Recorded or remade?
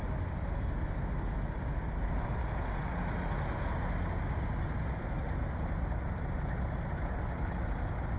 recorded